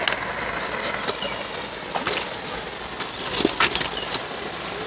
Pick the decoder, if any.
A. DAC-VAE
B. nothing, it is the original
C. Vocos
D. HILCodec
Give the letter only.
B